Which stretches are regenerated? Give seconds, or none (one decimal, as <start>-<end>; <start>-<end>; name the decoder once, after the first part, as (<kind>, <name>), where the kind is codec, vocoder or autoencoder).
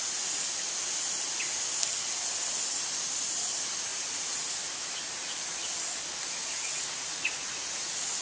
3.9-4.5 (vocoder, Vocos); 6.4-8.2